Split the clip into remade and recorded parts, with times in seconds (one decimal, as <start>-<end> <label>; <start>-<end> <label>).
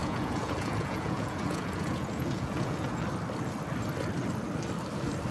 0.0-3.0 remade; 3.0-5.3 recorded